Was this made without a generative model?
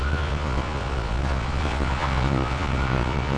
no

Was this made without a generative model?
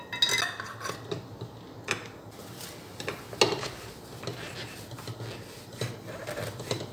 yes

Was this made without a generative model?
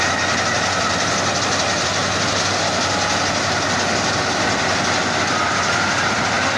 yes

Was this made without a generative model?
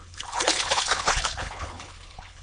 no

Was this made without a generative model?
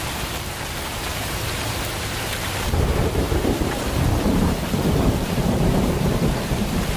no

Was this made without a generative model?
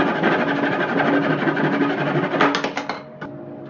yes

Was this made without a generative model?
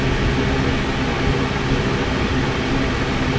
yes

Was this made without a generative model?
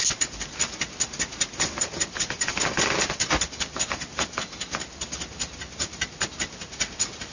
yes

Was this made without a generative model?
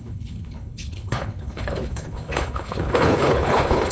no